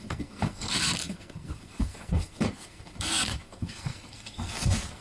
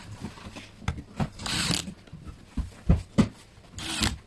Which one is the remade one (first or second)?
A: first